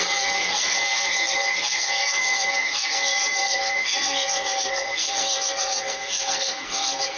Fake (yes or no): yes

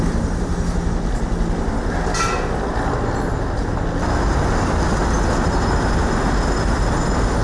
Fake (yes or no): no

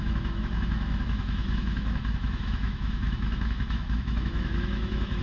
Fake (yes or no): yes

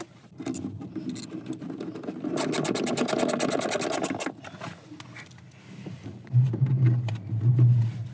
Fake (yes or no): no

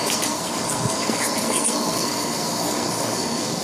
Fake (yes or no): yes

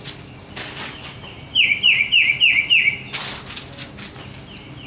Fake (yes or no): no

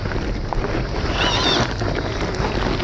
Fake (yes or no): no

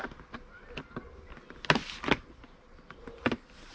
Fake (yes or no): no